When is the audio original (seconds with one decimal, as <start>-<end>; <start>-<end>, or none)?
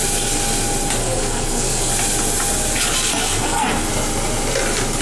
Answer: 0.0-1.0; 1.9-3.1; 3.9-5.0